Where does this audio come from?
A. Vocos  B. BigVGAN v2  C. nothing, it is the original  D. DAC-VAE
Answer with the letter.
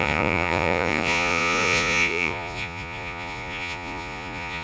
A